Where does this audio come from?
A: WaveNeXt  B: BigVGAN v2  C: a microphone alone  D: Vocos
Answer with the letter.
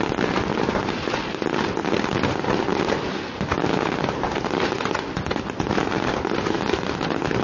C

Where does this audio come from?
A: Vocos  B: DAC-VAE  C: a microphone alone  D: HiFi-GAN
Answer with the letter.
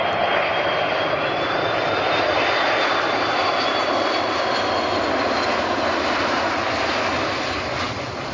C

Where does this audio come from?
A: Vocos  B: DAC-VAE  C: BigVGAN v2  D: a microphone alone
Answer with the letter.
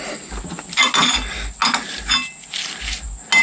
D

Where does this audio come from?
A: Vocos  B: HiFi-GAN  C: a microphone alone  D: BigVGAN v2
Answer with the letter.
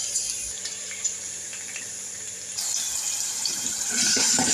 D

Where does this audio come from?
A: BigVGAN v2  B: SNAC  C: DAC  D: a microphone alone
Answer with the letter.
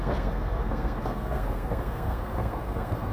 B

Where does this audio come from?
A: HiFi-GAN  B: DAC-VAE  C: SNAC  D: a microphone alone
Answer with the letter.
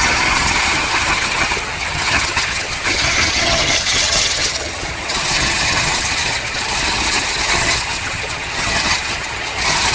A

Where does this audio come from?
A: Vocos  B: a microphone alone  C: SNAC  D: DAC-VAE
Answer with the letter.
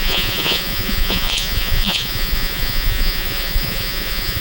A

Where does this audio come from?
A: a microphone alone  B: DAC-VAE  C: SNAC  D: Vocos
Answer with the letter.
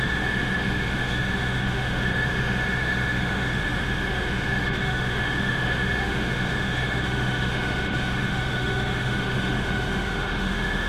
B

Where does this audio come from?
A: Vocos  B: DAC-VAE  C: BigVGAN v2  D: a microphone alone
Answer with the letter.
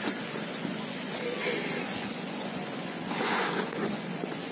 A